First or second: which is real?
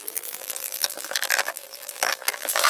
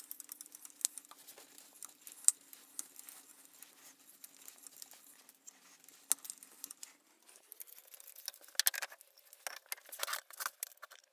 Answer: second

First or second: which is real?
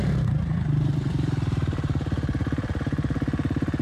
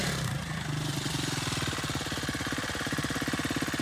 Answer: second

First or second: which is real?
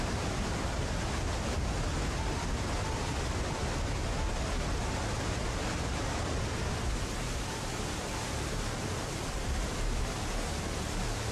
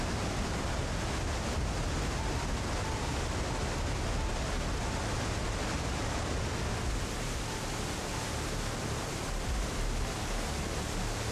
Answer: second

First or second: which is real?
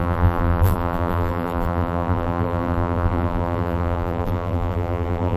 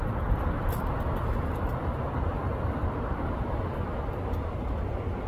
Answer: second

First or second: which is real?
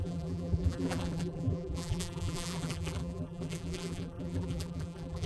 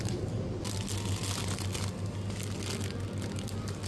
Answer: second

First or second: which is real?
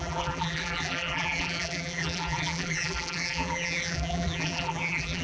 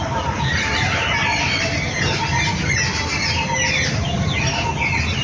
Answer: second